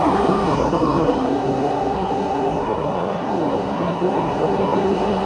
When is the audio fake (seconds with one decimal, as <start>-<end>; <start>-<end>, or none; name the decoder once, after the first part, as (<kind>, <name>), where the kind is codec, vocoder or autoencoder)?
0.0-5.3 (codec, SNAC)